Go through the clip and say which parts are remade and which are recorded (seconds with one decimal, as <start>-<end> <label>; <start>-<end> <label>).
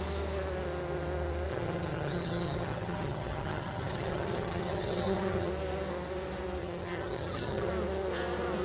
0.0-1.5 recorded; 1.5-5.5 remade; 5.5-6.6 recorded; 6.6-7.7 remade; 7.7-8.6 recorded